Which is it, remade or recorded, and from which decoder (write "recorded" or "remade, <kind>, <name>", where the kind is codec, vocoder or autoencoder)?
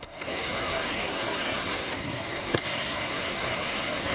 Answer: remade, codec, SNAC